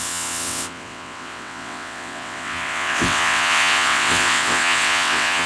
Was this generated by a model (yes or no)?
yes